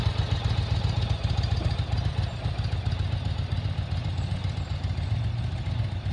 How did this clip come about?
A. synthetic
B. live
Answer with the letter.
B